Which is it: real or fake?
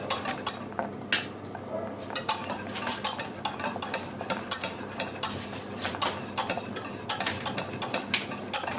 real